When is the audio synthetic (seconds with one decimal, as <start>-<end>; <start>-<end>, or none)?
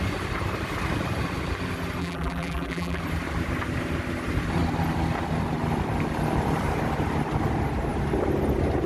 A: 2.0-3.0